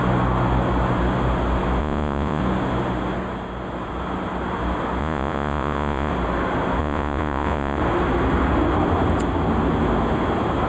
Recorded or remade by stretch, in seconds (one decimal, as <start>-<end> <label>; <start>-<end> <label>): 0.0-1.8 recorded; 1.8-2.4 remade; 2.4-5.0 recorded; 5.0-6.1 remade; 6.1-6.8 recorded; 6.8-7.8 remade; 7.8-10.7 recorded